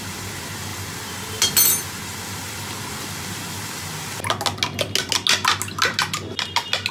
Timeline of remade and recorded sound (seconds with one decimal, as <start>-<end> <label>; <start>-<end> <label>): 0.0-6.9 recorded